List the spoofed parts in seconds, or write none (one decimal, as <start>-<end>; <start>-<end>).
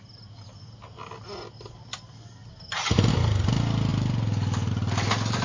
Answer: none